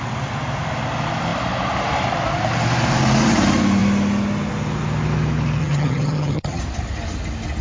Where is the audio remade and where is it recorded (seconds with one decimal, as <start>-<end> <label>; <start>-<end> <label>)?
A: 0.0-5.6 recorded; 5.6-6.6 remade; 6.6-7.6 recorded